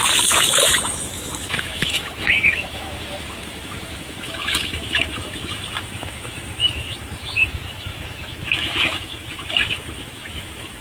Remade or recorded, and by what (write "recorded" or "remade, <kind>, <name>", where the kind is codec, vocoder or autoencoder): remade, autoencoder, DAC-VAE